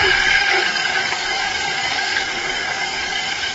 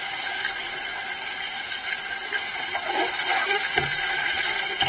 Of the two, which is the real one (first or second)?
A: second